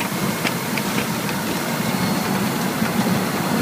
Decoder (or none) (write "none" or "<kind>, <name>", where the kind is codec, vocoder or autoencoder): none